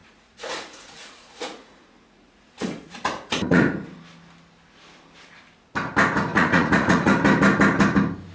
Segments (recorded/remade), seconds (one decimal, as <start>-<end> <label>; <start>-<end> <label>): 0.0-3.6 remade; 3.6-6.3 recorded; 6.3-7.1 remade; 7.1-8.3 recorded